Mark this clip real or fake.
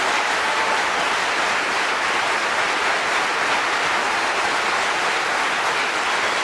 real